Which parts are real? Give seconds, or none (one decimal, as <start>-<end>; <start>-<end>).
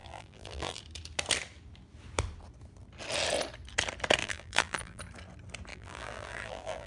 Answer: 0.8-4.2; 5.0-5.7